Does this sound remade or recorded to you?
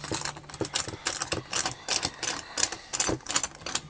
recorded